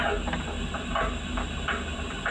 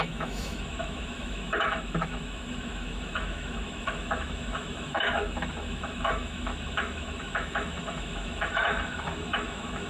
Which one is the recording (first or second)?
first